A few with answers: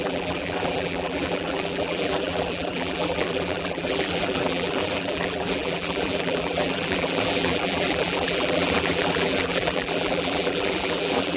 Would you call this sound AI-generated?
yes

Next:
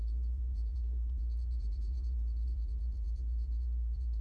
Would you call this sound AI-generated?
yes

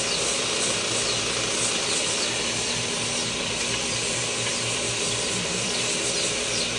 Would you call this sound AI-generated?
yes